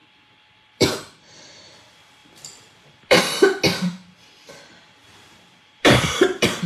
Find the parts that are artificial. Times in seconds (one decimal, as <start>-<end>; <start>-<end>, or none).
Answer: 0.0-1.7; 2.2-3.2; 5.0-6.7